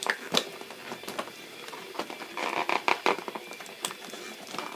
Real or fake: fake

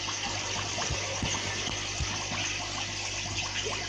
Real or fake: real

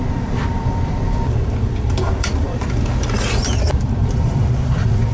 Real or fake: fake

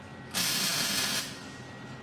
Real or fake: real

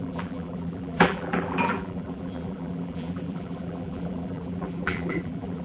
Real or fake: fake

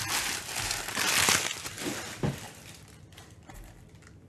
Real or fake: fake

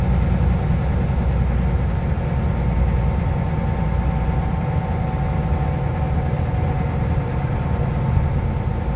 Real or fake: real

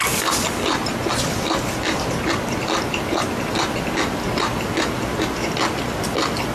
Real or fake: real